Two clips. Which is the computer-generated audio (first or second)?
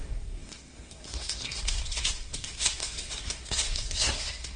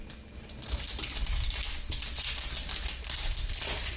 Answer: first